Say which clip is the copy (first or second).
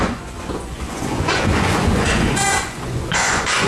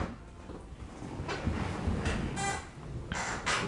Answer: first